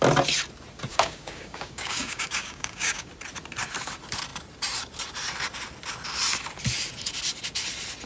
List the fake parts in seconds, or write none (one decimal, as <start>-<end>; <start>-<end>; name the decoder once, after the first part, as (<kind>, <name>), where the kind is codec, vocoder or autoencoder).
0.9-3.1 (codec, DAC)

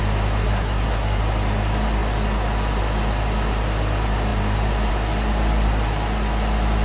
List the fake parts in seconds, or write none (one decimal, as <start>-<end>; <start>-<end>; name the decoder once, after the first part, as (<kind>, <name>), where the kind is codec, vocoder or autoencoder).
0.4-1.2 (codec, SNAC)

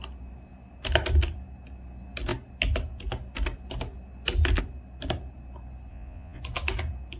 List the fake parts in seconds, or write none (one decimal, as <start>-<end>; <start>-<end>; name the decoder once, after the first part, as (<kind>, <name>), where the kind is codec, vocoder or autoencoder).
5.9-6.4 (vocoder, Vocos)

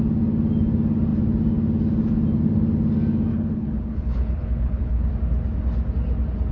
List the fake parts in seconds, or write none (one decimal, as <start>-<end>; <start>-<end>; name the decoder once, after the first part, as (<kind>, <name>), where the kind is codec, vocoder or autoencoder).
3.3-5.1 (codec, HILCodec)

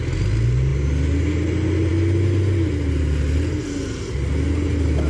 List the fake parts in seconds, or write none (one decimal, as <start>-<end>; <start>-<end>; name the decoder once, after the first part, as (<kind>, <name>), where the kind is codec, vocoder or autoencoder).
none

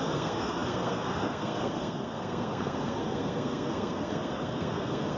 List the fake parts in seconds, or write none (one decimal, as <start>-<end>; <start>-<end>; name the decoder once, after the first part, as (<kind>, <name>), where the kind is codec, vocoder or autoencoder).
0.0-5.2 (codec, SNAC)

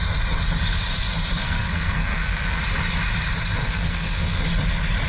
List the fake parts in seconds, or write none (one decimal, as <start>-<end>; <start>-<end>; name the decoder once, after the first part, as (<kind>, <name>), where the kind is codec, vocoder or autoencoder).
1.4-2.6 (codec, SNAC); 3.6-4.4

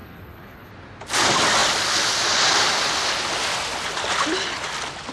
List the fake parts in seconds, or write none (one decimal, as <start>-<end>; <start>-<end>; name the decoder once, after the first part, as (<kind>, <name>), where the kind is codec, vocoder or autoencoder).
0.0-0.7 (codec, HILCodec)